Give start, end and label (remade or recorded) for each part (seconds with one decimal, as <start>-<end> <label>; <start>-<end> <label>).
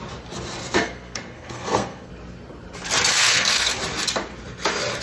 0.0-0.6 recorded; 0.6-2.1 remade; 2.1-3.1 recorded; 3.1-3.7 remade; 3.7-5.0 recorded